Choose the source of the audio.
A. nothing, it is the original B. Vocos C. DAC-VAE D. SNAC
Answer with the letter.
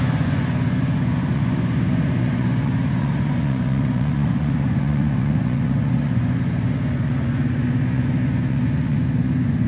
B